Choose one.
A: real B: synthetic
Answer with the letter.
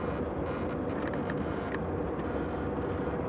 A